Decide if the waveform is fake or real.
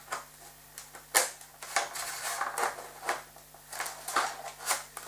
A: real